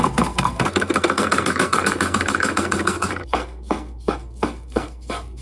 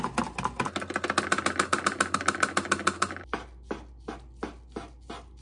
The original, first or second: second